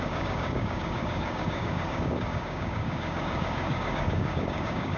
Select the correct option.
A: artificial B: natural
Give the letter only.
A